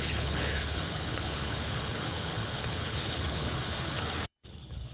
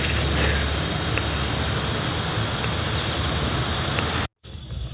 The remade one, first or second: first